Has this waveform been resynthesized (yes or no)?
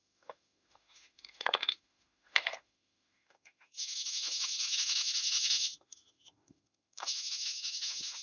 yes